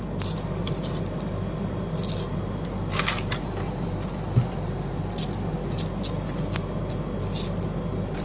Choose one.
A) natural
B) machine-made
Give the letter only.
A